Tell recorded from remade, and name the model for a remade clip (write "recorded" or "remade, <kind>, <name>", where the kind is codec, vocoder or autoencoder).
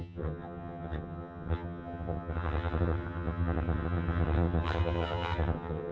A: remade, vocoder, HiFi-GAN